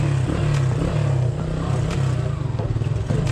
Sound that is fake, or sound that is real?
real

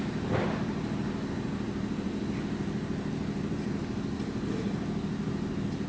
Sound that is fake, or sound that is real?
real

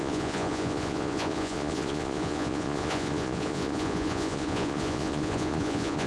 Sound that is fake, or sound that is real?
fake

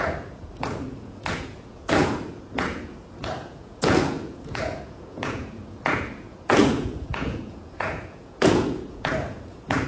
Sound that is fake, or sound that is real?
fake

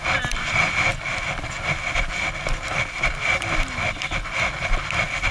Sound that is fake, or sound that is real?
real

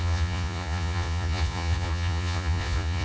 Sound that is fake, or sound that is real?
fake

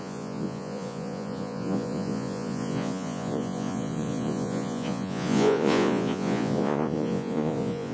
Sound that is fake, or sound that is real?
fake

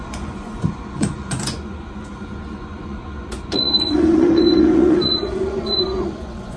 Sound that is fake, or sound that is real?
fake